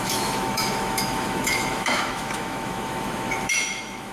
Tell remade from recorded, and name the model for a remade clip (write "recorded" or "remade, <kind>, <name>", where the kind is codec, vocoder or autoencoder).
remade, autoencoder, DAC-VAE